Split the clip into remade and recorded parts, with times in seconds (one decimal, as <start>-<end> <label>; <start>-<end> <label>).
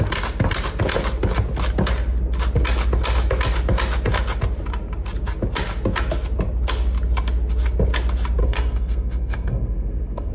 0.0-8.4 recorded; 8.4-10.3 remade